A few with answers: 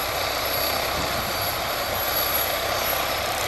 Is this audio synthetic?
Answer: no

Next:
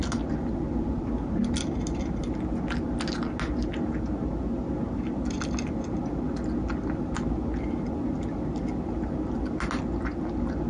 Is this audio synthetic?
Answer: no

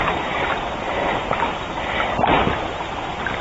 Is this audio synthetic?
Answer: no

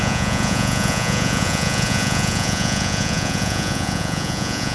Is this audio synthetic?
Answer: yes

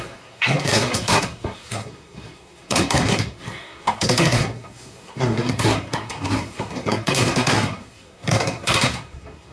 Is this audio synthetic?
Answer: yes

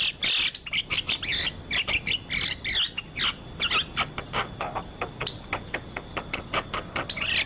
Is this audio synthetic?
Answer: no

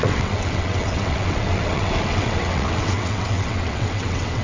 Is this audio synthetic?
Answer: yes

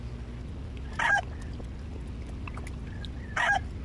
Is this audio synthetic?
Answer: no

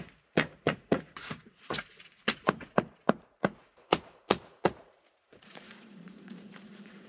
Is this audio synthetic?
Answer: yes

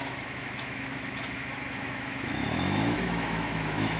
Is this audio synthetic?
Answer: yes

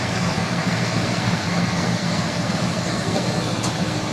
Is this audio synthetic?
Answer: yes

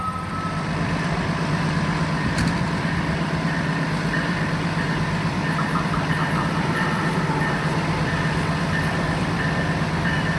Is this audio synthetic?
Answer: yes